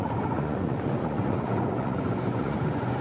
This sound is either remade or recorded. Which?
remade